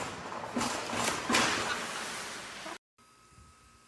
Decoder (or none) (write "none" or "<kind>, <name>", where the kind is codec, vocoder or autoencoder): none